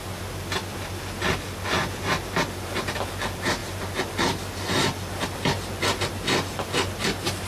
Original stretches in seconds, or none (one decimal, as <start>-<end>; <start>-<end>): 0.0-7.5